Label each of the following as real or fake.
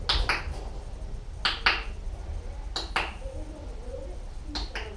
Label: real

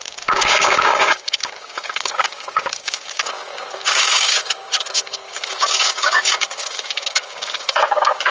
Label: fake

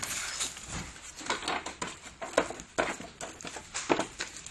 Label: real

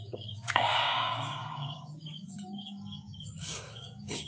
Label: fake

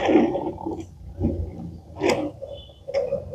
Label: real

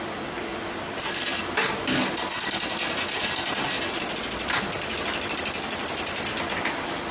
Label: real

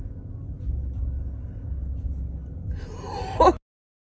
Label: real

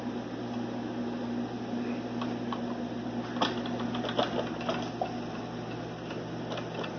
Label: real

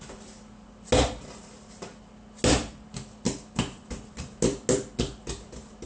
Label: real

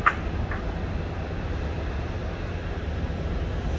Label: real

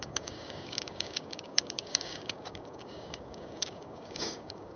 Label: fake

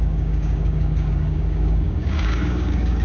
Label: fake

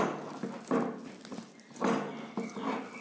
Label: real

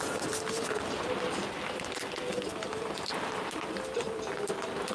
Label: real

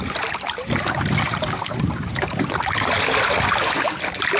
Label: real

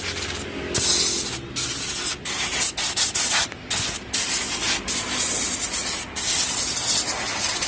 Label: real